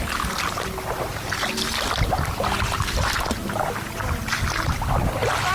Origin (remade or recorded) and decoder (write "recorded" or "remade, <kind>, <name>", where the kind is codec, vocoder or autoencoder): recorded